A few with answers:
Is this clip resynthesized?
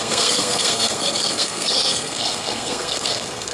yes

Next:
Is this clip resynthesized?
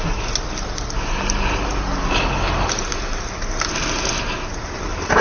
no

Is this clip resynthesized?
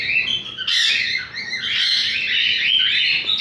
no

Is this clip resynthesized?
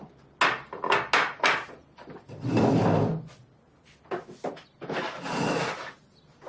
no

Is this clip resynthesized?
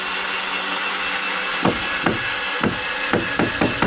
no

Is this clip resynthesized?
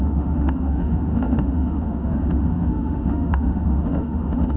yes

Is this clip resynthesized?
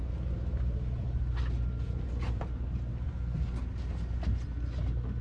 no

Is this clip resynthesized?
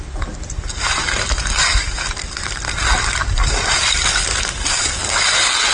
no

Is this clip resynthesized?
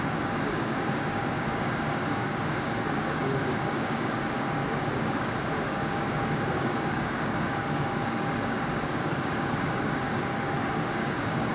yes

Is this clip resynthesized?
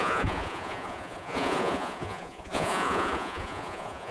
yes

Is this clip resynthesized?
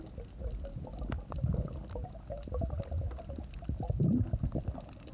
no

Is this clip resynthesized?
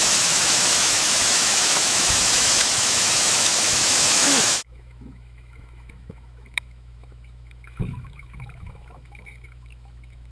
yes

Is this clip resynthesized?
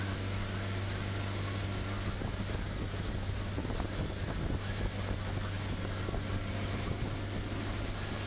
no